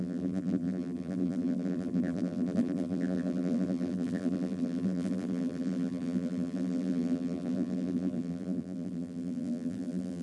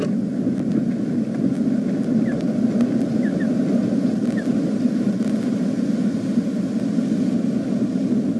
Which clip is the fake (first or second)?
first